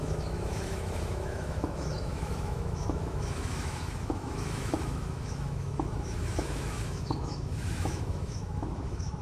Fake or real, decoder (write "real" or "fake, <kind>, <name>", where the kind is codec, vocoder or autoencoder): fake, autoencoder, DAC-VAE